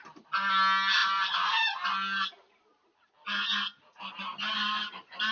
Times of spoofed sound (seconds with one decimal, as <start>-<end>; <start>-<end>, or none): none